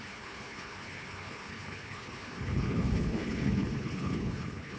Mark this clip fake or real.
fake